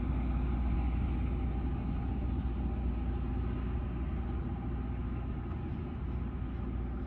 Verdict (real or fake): real